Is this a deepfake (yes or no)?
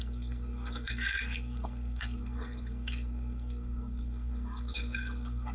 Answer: yes